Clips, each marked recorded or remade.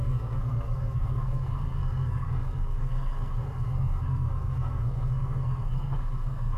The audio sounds remade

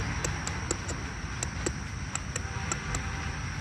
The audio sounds recorded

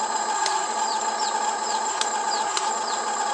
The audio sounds recorded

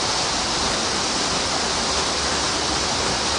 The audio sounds recorded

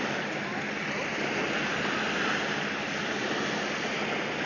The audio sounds recorded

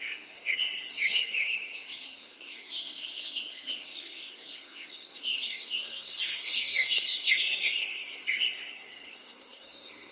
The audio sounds remade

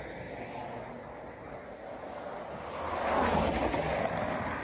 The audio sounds recorded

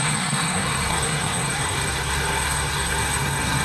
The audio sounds remade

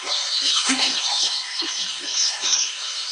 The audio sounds remade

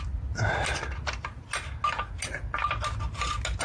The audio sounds recorded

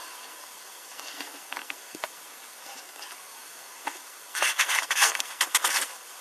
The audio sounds remade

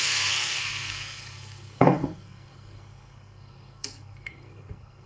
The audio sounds remade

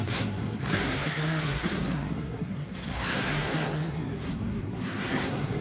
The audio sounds remade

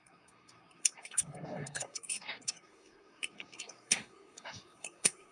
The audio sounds remade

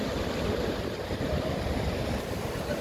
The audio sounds recorded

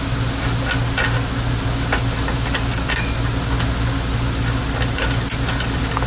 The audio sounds recorded